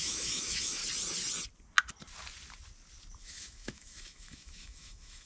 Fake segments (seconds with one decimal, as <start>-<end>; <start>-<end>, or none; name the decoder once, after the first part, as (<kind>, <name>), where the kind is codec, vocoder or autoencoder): 0.0-0.8 (autoencoder, DAC-VAE); 3.2-5.3